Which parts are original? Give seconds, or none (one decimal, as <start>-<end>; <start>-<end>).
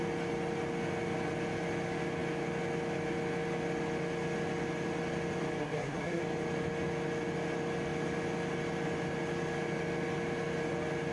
0.0-5.6; 6.2-11.1